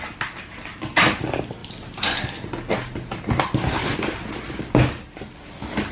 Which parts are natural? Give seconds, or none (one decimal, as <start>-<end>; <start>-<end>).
0.0-5.9